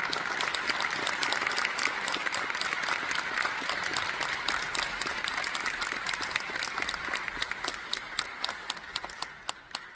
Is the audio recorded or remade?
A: recorded